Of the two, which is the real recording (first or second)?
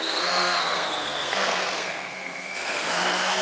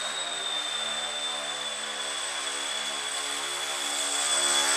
second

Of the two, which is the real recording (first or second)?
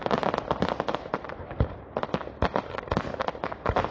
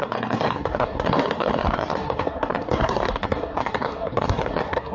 first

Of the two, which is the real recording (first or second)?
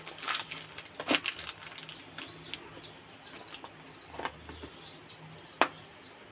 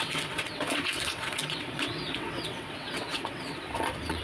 first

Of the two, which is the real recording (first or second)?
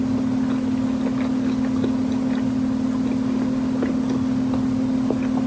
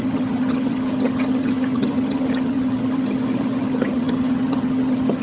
first